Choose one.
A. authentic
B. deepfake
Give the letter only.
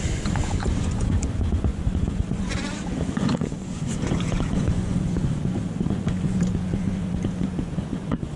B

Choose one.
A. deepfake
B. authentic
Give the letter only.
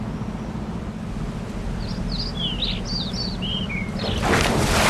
B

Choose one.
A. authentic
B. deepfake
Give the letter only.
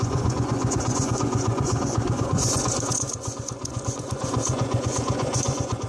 B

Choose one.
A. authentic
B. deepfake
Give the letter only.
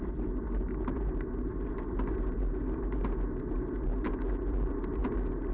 A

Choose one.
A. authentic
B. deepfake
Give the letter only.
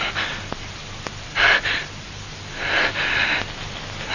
A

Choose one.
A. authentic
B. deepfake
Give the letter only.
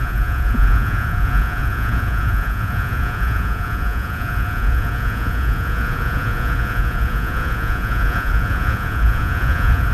B